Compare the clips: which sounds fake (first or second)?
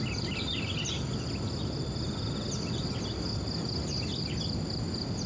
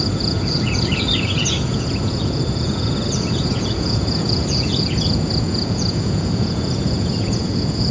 second